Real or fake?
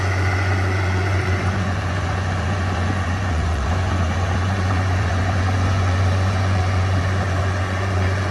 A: fake